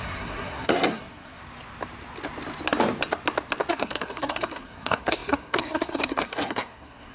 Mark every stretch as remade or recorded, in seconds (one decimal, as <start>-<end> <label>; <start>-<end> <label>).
0.0-1.4 remade; 1.4-3.7 recorded; 3.7-7.1 remade